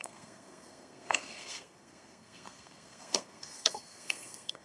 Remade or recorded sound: remade